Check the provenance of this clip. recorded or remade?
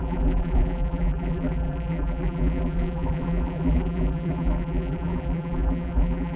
remade